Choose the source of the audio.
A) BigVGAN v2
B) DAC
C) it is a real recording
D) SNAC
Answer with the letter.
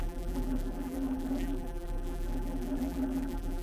A